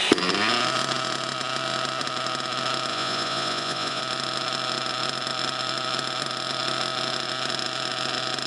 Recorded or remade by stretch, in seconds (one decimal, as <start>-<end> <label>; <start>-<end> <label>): 0.0-2.9 recorded; 2.9-4.0 remade; 4.0-8.5 recorded